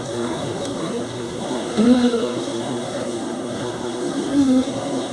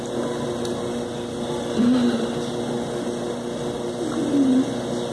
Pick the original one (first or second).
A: second